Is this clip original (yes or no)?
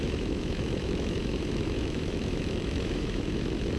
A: no